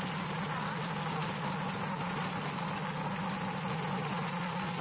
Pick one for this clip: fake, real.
real